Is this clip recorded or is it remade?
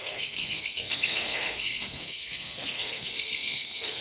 remade